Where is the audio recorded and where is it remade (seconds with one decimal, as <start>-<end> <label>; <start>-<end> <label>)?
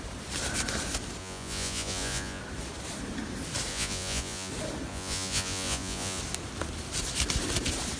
0.0-1.2 recorded; 1.2-2.4 remade; 2.4-3.7 recorded; 3.7-4.5 remade; 4.5-4.9 recorded; 4.9-6.2 remade; 6.2-8.0 recorded